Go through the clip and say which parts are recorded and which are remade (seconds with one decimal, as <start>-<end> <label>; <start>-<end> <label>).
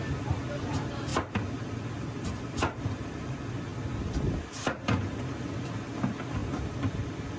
0.0-7.4 recorded